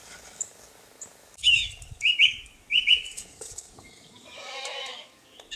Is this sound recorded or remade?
remade